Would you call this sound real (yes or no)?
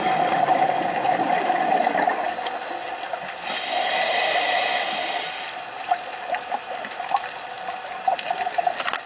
yes